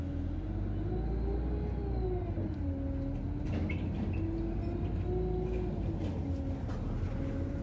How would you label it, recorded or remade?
recorded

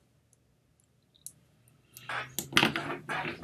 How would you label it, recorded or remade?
recorded